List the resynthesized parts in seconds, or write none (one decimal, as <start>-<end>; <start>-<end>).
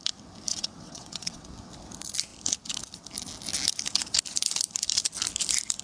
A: 0.5-1.5